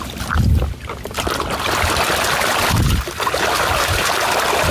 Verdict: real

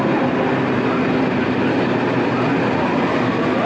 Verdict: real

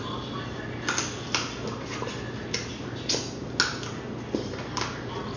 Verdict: real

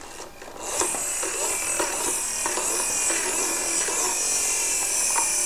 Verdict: real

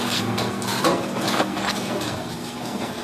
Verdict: fake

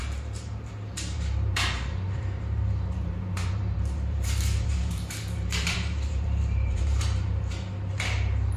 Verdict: fake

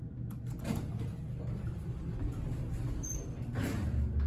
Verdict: real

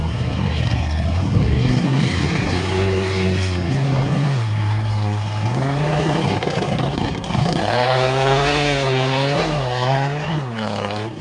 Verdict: fake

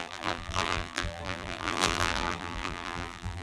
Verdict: fake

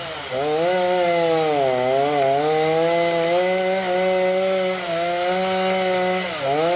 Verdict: real